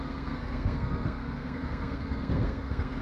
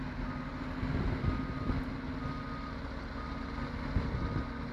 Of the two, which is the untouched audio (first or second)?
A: second